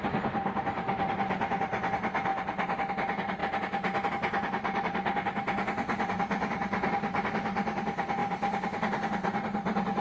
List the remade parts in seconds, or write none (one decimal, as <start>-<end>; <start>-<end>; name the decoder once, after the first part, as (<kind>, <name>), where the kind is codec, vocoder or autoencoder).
3.4-4.1 (vocoder, BigVGAN v2); 8.2-8.8